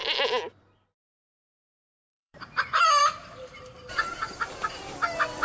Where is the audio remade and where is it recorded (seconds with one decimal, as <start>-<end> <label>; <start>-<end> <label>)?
0.0-1.1 recorded; 1.1-3.7 remade; 3.7-5.4 recorded